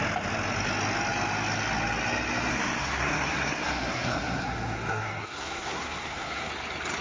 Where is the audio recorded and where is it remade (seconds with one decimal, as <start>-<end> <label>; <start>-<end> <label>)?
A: 0.0-2.5 recorded; 2.5-6.5 remade; 6.5-7.0 recorded